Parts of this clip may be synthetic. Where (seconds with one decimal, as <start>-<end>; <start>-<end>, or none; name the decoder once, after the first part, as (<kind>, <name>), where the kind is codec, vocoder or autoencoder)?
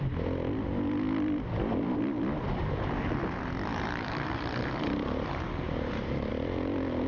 3.7-6.3 (vocoder, BigVGAN v2)